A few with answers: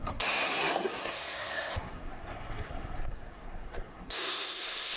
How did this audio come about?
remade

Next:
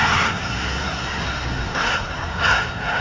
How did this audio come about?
remade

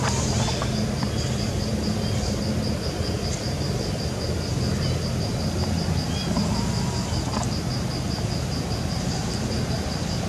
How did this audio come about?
recorded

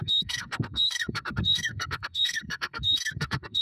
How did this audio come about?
remade